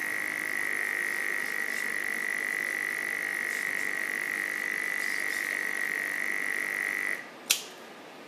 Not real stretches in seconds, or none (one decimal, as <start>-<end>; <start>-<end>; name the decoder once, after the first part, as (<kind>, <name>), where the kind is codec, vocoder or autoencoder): 4.4-6.3 (vocoder, BigVGAN v2)